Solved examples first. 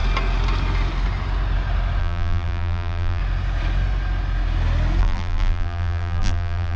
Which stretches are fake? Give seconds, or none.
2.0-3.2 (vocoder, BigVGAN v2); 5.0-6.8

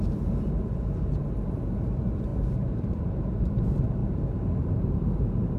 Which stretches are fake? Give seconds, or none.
0.0-4.0 (vocoder, BigVGAN v2); 4.7-5.6

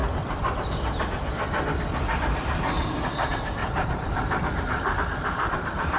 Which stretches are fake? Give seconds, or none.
3.6-6.0 (vocoder, BigVGAN v2)

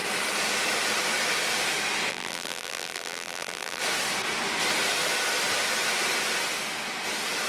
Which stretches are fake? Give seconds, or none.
2.1-3.8 (vocoder, BigVGAN v2)

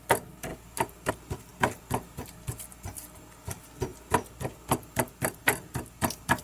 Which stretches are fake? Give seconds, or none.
none

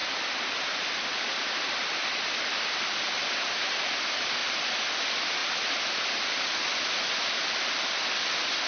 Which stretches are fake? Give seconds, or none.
4.4-5.0 (vocoder, BigVGAN v2)

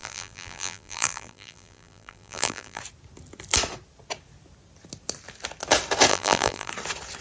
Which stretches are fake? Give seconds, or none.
0.0-2.8 (vocoder, BigVGAN v2); 6.1-6.7

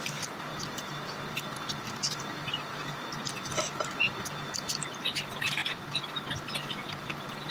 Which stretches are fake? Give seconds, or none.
0.5-3.2 (vocoder, BigVGAN v2)